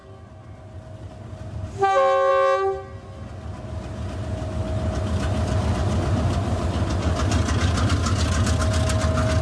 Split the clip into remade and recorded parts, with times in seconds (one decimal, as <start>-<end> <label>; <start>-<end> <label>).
0.0-9.4 recorded